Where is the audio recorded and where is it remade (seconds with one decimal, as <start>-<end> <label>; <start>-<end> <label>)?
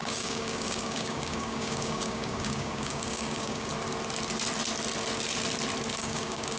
0.0-3.7 remade; 3.7-5.9 recorded; 5.9-6.6 remade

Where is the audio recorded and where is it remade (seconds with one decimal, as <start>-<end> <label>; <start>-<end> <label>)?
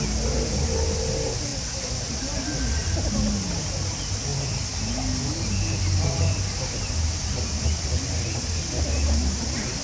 0.0-9.8 recorded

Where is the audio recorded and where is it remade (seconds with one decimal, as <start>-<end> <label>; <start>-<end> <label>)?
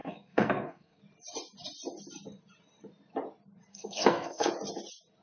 0.0-1.0 remade; 1.0-3.7 recorded; 3.7-4.5 remade; 4.5-5.2 recorded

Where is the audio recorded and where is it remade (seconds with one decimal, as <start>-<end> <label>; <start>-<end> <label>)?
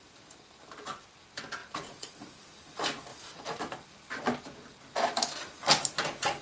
0.0-1.6 recorded; 1.6-2.4 remade; 2.4-3.1 recorded; 3.1-3.6 remade; 3.6-6.4 recorded